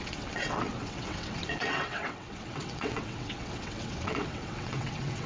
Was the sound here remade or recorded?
remade